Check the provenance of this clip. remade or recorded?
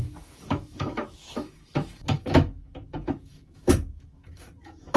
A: remade